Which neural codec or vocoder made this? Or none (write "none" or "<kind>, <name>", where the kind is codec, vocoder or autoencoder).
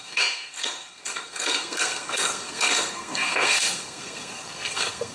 codec, SNAC